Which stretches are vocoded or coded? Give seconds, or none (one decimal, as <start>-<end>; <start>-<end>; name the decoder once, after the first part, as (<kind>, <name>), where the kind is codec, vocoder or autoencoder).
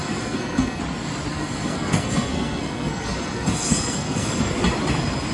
0.0-0.8 (codec, SNAC); 1.3-4.5